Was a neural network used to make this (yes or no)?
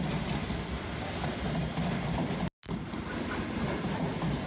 no